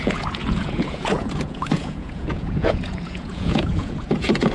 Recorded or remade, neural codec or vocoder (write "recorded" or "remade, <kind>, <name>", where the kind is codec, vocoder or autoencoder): remade, vocoder, Vocos